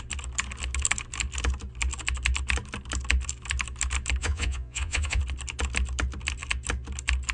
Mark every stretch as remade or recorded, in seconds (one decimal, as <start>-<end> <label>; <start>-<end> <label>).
0.0-4.2 recorded; 4.2-5.2 remade; 5.2-7.3 recorded

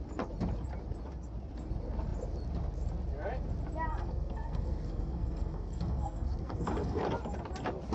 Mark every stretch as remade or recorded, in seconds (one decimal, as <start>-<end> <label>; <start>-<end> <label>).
0.0-3.9 recorded; 3.9-7.0 remade; 7.0-7.9 recorded

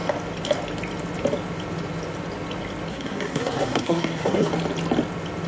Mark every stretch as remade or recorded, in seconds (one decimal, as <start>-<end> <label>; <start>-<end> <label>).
0.0-2.9 recorded; 2.9-4.5 remade; 4.5-5.5 recorded

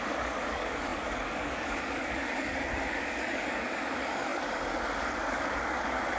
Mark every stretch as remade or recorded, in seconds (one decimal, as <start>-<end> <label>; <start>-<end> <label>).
0.0-6.2 remade

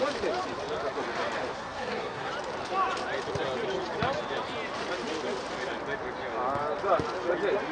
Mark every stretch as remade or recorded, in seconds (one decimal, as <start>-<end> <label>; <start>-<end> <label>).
0.0-1.5 recorded; 1.5-2.3 remade; 2.3-7.7 recorded

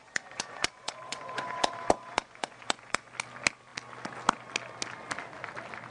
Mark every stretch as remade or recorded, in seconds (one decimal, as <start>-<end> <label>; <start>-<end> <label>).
0.0-3.1 remade; 3.1-5.9 recorded

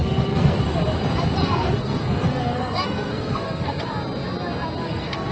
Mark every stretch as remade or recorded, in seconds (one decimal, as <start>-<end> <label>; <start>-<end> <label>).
0.0-0.6 remade; 0.6-1.4 recorded; 1.4-3.8 remade; 3.8-4.8 recorded; 4.8-5.3 remade

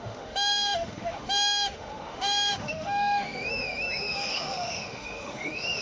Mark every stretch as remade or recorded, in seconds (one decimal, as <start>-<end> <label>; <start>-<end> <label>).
0.0-5.8 remade